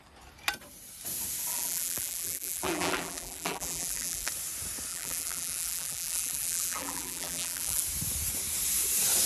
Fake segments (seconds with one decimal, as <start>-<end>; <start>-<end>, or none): 1.5-4.3; 4.9-7.8